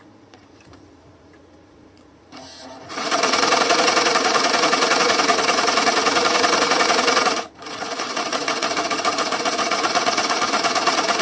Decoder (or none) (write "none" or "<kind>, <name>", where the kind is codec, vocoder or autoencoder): vocoder, Vocos